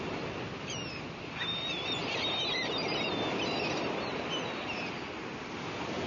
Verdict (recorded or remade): recorded